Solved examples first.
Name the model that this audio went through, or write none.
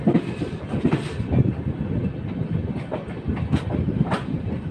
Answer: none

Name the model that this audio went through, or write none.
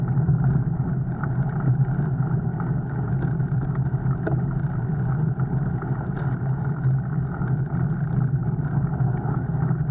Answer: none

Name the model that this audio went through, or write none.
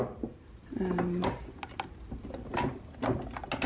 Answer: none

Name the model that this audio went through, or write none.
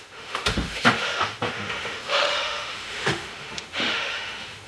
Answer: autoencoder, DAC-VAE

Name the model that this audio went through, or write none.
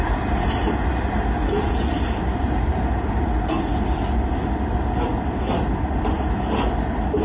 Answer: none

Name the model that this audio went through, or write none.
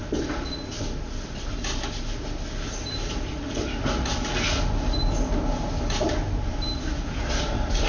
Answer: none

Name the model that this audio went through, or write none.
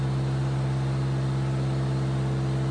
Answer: none